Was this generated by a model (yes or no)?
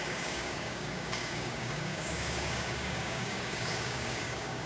yes